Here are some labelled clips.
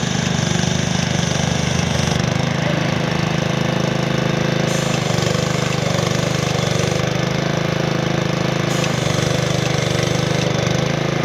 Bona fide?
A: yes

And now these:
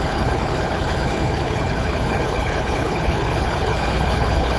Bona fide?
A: no